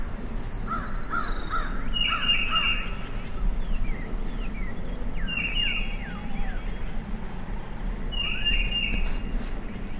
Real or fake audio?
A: real